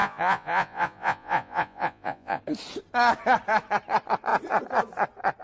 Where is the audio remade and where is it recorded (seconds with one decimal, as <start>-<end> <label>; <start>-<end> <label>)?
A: 0.0-2.4 remade; 2.4-5.4 recorded